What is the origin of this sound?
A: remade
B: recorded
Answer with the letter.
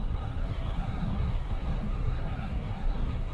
A